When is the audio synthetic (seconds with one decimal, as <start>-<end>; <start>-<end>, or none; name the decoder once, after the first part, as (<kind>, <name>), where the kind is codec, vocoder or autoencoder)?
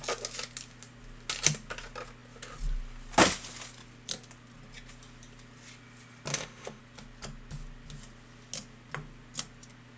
6.3-6.8 (autoencoder, DAC-VAE)